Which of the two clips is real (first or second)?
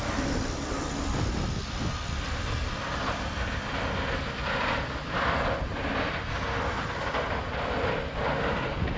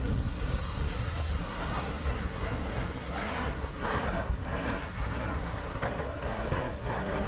first